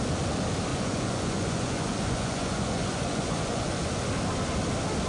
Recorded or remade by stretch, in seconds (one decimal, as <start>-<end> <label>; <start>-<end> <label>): 0.0-0.7 recorded; 0.7-3.8 remade; 3.8-5.1 recorded